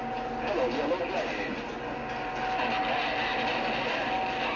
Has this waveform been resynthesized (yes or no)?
no